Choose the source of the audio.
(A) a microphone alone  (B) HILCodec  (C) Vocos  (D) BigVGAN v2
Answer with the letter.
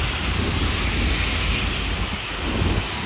A